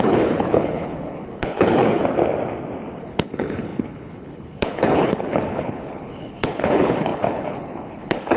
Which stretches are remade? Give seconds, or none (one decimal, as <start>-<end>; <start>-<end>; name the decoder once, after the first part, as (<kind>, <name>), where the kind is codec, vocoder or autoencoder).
0.0-2.0 (codec, HILCodec); 3.0-8.4